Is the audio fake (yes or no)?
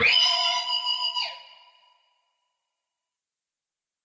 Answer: no